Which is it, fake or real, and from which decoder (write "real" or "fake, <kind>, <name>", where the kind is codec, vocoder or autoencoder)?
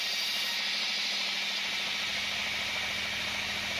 real